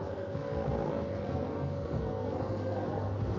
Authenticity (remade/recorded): remade